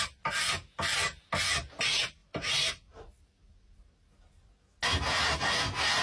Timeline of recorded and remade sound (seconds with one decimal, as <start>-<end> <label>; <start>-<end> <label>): 0.0-2.2 recorded; 2.2-3.8 remade; 3.8-6.0 recorded